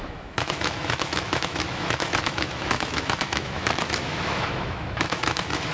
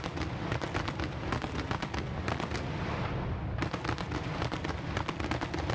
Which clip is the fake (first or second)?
first